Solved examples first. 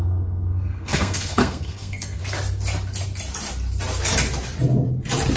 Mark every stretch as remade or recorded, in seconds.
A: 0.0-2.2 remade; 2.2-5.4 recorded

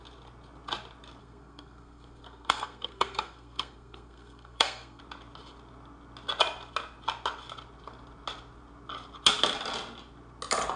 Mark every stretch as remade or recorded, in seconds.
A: 0.0-1.2 recorded; 1.2-5.0 remade; 5.0-10.8 recorded

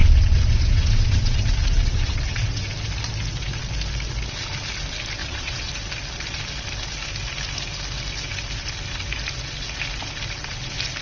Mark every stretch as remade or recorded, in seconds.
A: 0.0-2.7 remade; 2.7-5.2 recorded; 5.2-5.7 remade; 5.7-11.0 recorded

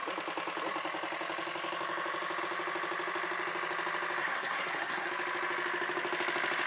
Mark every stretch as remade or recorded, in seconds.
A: 0.0-4.2 recorded; 4.2-5.1 remade; 5.1-6.7 recorded